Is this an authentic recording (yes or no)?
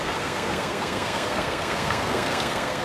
no